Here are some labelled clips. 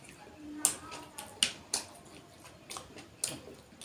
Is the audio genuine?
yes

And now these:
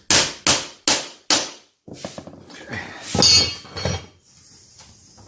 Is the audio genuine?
yes